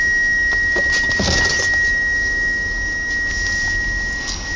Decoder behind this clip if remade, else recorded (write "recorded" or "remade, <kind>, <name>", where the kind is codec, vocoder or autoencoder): recorded